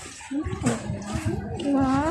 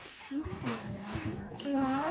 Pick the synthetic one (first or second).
second